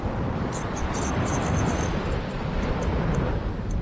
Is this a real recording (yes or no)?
yes